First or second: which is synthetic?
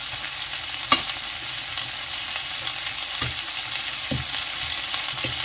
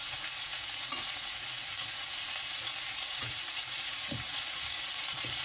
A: second